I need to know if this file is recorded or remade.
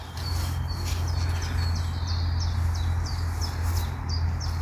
recorded